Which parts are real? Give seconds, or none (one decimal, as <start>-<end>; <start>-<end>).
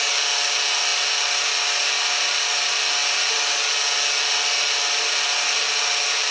0.0-6.3